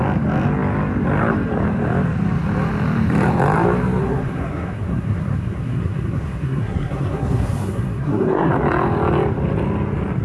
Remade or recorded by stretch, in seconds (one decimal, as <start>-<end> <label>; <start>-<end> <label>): 0.0-4.0 recorded; 4.0-8.5 remade; 8.5-10.2 recorded